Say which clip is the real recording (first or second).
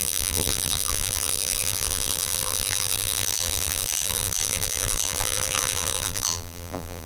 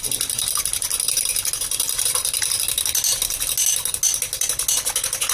second